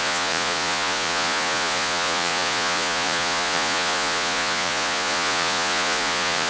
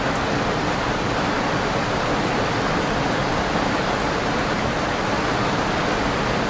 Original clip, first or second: second